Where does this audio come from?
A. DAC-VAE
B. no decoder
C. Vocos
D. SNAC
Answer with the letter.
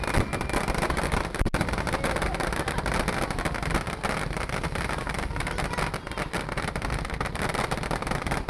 B